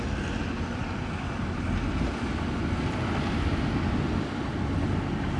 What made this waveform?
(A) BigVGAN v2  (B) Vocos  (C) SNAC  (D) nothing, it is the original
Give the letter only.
D